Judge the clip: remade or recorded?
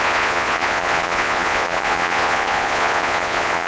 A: remade